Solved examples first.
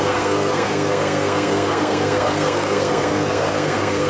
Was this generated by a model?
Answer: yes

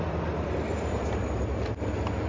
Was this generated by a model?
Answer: no